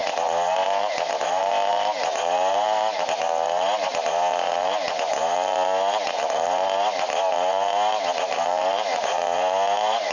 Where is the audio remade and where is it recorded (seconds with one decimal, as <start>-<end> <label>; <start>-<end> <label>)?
0.0-10.1 recorded